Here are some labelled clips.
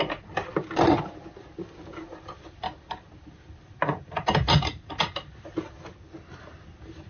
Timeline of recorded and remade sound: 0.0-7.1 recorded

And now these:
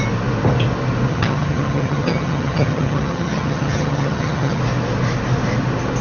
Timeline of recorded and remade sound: 0.0-1.1 recorded; 1.1-4.6 remade; 4.6-6.0 recorded

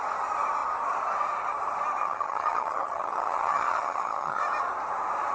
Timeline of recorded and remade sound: 0.0-2.0 recorded; 2.0-4.4 remade; 4.4-5.3 recorded

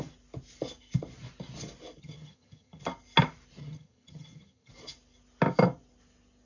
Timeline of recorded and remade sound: 0.0-2.0 recorded; 2.0-2.8 remade; 2.8-3.6 recorded; 3.6-4.7 remade; 4.7-6.5 recorded

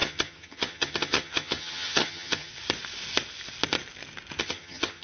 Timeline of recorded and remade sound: 0.0-2.5 remade; 2.5-4.4 recorded; 4.4-5.0 remade

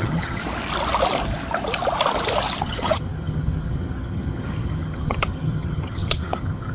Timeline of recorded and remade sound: 0.0-0.4 remade; 0.4-2.6 recorded; 2.6-6.7 remade